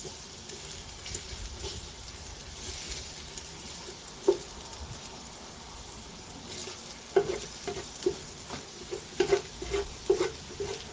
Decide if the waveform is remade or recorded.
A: recorded